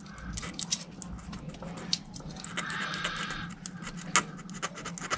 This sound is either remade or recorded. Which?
recorded